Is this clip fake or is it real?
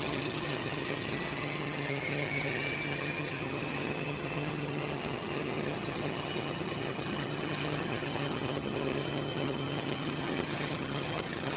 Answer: fake